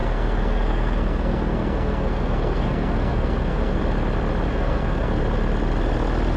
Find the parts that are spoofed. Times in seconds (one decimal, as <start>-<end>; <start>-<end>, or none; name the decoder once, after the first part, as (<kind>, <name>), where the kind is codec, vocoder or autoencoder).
0.0-3.8 (codec, SNAC); 4.5-5.2